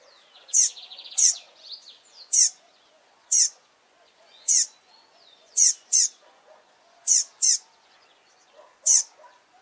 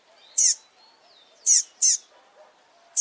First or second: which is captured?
second